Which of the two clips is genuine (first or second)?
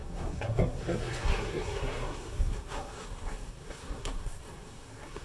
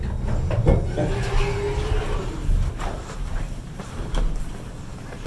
second